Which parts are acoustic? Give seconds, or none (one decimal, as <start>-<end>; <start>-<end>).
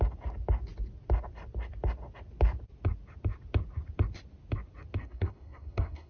0.0-5.0